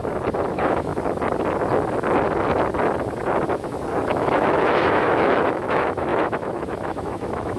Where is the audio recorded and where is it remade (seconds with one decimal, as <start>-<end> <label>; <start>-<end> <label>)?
0.0-0.5 recorded; 0.5-0.9 remade; 0.9-4.0 recorded; 4.0-7.6 remade